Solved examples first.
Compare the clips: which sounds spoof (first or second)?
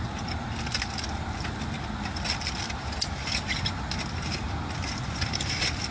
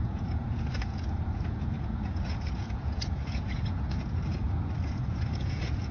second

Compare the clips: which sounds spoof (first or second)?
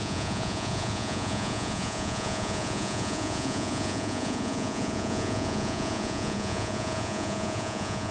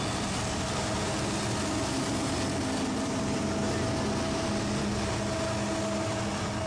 first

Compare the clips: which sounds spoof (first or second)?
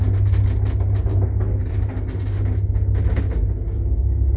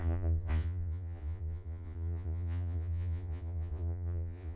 second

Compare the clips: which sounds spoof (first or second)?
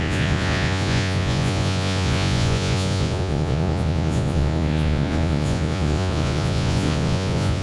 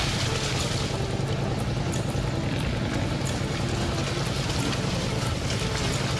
first